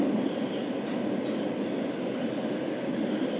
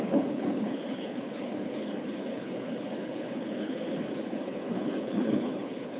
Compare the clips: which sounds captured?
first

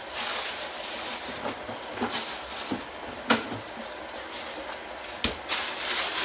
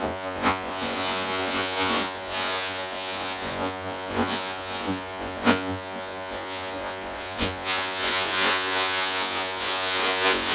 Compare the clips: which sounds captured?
first